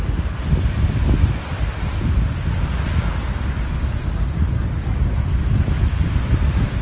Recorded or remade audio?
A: recorded